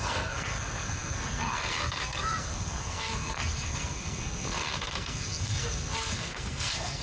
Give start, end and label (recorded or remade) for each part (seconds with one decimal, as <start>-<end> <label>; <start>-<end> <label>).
0.0-7.0 remade